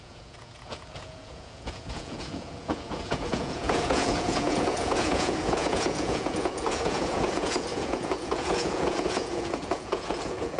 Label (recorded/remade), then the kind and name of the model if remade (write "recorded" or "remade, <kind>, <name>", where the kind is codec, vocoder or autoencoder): remade, vocoder, Vocos